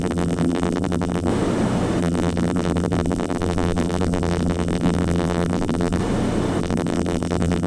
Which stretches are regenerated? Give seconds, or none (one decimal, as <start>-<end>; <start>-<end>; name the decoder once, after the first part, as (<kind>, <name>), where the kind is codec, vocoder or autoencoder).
0.0-1.3 (vocoder, BigVGAN v2); 2.0-6.0; 6.6-7.7